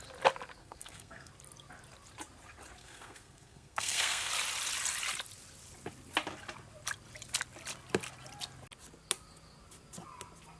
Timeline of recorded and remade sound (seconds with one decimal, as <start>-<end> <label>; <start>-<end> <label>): 0.0-0.6 recorded; 0.6-1.3 remade; 1.3-2.8 recorded; 2.8-4.3 remade; 4.3-10.6 recorded

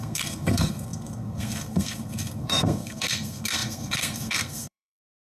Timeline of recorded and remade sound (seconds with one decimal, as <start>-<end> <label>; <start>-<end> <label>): 0.0-5.4 remade

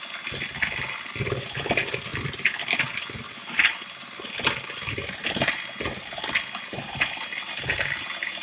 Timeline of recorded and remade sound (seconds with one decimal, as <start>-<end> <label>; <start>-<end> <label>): 0.0-2.1 recorded; 2.1-2.6 remade; 2.6-8.4 recorded

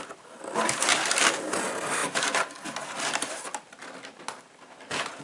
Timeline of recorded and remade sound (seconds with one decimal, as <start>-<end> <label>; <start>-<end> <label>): 0.0-0.9 recorded; 0.9-1.6 remade; 1.6-5.2 recorded

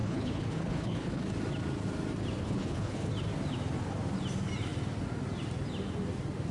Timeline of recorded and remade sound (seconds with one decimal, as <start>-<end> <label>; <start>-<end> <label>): 0.0-1.2 remade; 1.2-2.4 recorded; 2.4-3.1 remade; 3.1-6.5 recorded

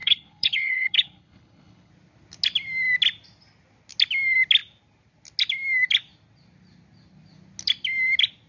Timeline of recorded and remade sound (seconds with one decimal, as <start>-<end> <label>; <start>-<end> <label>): 0.0-1.9 remade; 1.9-8.5 recorded